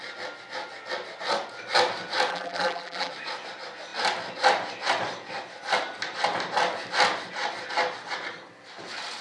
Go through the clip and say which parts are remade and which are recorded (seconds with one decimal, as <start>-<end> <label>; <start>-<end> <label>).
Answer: 0.0-2.3 recorded; 2.3-3.1 remade; 3.1-9.2 recorded